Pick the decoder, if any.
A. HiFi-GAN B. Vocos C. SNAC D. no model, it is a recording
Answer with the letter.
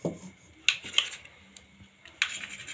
D